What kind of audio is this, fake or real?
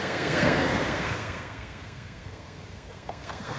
fake